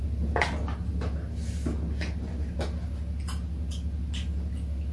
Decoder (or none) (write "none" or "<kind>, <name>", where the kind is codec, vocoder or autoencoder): none